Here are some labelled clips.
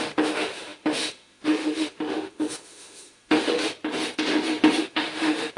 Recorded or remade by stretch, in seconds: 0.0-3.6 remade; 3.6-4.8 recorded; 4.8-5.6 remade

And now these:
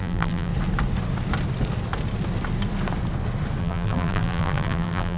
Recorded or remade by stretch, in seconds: 0.0-0.5 remade; 0.5-3.6 recorded; 3.6-5.2 remade